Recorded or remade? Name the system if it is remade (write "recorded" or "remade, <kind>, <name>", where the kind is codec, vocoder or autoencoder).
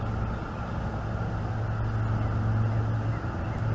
recorded